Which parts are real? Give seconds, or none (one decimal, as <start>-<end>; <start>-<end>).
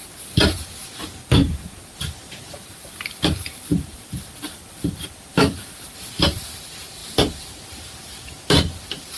0.0-3.7; 5.6-7.0; 7.6-9.2